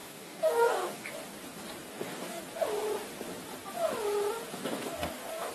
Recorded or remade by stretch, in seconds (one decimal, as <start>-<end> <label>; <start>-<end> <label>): 0.0-1.1 remade; 1.1-1.9 recorded; 1.9-2.4 remade; 2.4-4.5 recorded; 4.5-5.5 remade